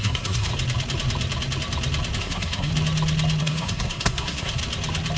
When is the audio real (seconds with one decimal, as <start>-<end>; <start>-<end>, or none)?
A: 0.5-2.2; 2.7-3.4; 4.6-5.2